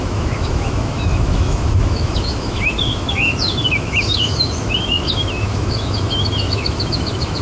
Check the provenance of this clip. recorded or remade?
remade